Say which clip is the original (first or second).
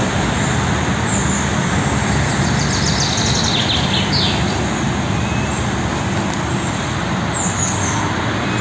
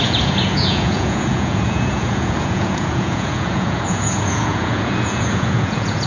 first